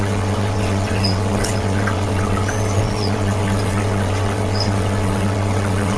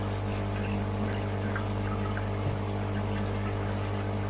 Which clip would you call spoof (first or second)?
first